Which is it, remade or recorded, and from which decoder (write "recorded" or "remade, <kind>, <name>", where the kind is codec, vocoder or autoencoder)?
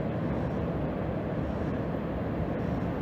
recorded